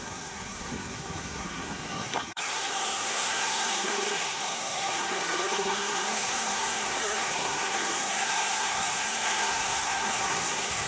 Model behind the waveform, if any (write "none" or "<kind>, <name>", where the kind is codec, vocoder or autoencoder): codec, SNAC